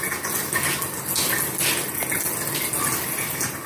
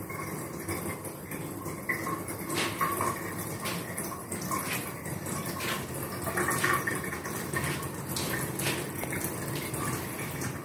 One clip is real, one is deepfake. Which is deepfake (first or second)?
second